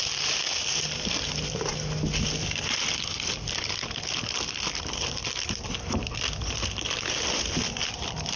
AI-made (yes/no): yes